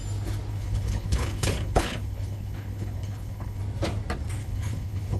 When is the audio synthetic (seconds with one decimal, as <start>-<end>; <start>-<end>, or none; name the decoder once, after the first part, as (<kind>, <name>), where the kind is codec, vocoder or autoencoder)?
0.5-3.6 (codec, HILCodec); 4.4-5.2